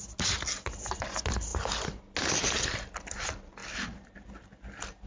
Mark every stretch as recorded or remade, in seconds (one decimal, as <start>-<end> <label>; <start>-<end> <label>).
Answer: 0.0-5.1 recorded